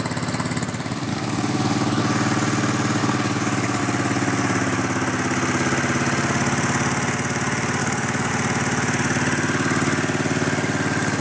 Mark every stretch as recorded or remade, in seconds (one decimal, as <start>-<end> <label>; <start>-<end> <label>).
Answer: 0.0-1.1 recorded; 1.1-2.0 remade; 2.0-3.0 recorded; 3.0-3.8 remade; 3.8-7.8 recorded; 7.8-8.3 remade; 8.3-11.2 recorded